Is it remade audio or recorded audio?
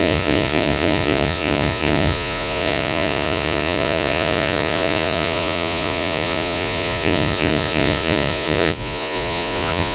remade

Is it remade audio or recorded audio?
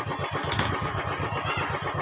recorded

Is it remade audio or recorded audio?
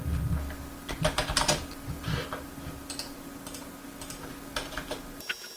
recorded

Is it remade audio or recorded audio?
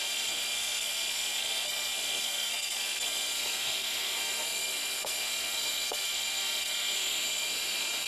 remade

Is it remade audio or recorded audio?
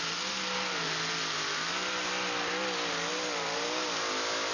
recorded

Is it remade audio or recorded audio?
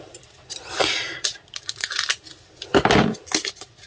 recorded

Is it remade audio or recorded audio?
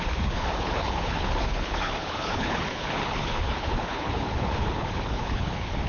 remade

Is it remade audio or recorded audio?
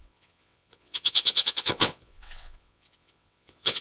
remade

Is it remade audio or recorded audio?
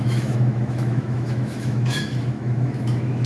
remade